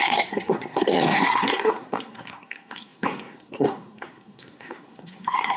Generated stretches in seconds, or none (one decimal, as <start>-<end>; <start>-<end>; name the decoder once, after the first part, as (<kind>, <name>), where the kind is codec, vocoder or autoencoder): 0.0-5.6 (codec, SNAC)